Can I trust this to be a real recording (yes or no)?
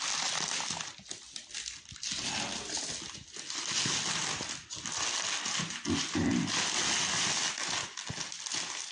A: yes